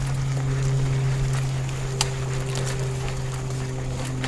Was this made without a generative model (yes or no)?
yes